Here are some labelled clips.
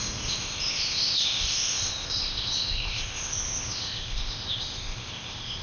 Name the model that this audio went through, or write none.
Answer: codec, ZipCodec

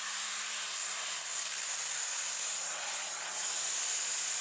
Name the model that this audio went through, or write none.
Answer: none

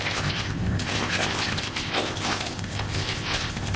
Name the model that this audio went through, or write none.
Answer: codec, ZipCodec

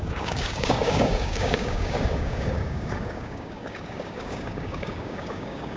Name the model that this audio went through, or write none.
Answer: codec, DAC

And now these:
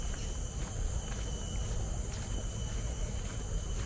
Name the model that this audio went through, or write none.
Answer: none